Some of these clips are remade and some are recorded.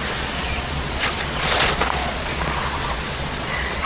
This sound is remade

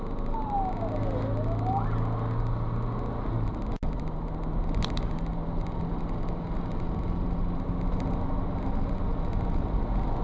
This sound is recorded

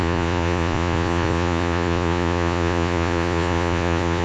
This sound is remade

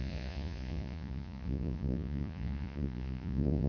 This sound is remade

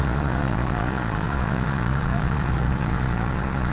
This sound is remade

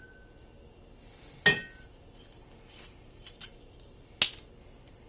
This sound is recorded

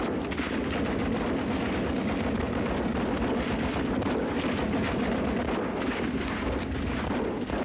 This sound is recorded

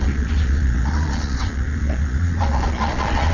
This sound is remade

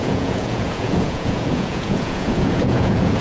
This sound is remade